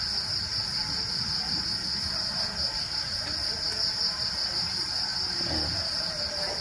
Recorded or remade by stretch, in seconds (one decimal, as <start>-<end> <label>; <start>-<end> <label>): 0.0-6.6 recorded